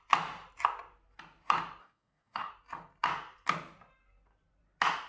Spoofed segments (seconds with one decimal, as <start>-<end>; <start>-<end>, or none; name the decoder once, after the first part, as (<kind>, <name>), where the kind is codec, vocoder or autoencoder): 1.8-2.5 (codec, DAC)